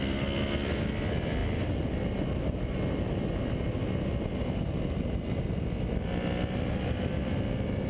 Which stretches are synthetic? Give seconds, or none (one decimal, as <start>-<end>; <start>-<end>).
none